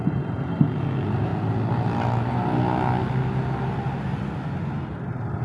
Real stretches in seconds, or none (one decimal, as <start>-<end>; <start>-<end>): 0.8-5.4